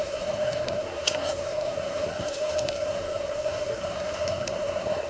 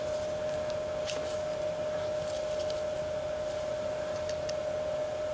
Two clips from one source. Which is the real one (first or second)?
second